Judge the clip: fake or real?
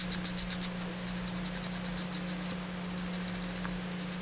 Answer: real